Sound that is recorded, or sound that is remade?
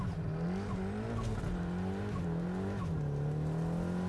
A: recorded